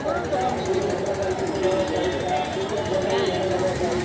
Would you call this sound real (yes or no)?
yes